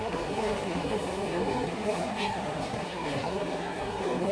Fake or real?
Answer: fake